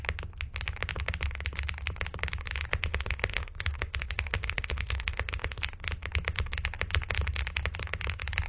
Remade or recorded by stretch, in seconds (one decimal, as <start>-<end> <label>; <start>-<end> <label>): 0.0-2.9 recorded; 2.9-5.6 remade; 5.6-8.5 recorded